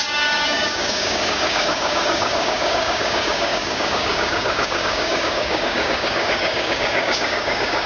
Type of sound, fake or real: fake